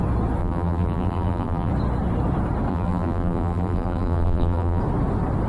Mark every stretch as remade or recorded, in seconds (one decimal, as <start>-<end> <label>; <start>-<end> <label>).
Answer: 0.0-0.4 recorded; 0.4-1.7 remade; 1.7-2.7 recorded; 2.7-4.8 remade; 4.8-5.5 recorded